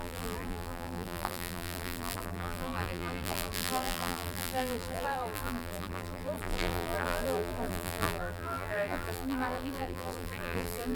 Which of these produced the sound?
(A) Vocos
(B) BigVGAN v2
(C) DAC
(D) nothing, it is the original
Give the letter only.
B